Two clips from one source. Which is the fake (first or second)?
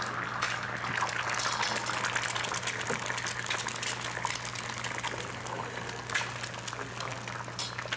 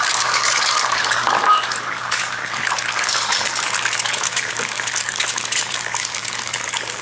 second